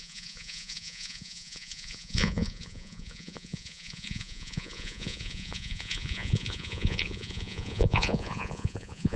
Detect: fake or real fake